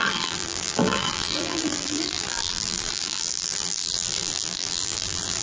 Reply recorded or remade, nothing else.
remade